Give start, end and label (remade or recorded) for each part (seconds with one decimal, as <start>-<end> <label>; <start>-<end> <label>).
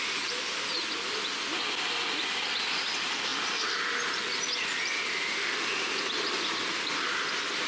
0.0-5.3 recorded; 5.3-5.9 remade; 5.9-7.7 recorded